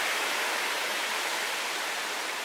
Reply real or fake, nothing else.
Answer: fake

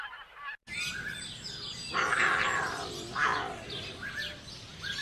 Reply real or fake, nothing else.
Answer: real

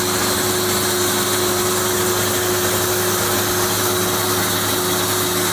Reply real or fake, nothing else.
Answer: real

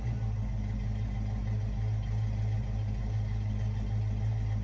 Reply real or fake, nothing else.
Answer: real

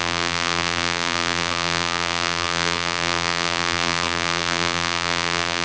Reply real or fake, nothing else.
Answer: fake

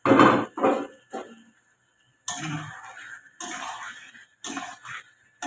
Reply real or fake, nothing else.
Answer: real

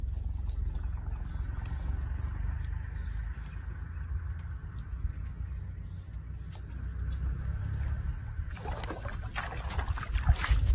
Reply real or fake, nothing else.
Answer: real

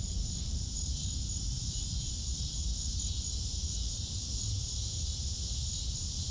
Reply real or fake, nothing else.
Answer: fake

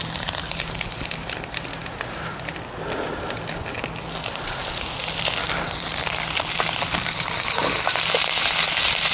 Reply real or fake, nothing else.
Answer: fake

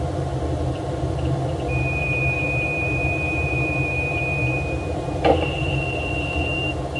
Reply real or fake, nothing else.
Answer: fake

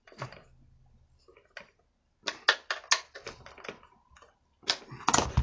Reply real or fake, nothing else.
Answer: real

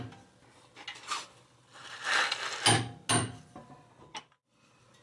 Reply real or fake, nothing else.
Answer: real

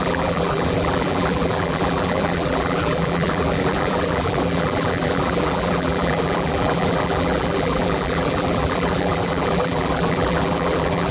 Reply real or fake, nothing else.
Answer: fake